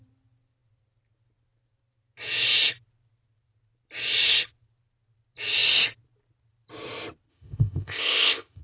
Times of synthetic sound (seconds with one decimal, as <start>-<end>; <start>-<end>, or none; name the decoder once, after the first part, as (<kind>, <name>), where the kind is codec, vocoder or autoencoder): 7.3-8.6 (codec, ZipCodec)